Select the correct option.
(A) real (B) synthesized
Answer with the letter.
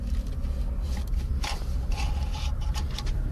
B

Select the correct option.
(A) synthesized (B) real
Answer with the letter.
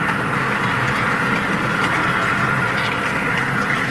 B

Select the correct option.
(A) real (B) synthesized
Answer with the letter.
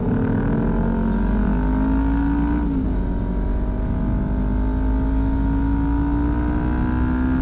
A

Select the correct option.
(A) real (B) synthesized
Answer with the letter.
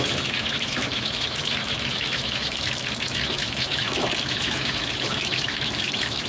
B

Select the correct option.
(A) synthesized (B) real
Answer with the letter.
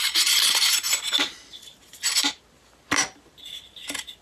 B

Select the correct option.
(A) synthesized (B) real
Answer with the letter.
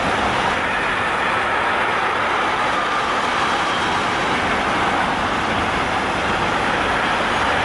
B